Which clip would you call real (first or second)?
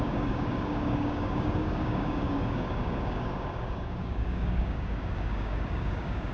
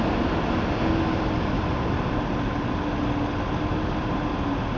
second